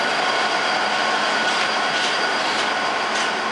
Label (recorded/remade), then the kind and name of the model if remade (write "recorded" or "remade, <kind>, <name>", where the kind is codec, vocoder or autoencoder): recorded